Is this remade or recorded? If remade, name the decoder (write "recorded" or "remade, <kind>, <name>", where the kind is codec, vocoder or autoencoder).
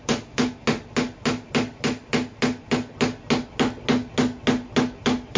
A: recorded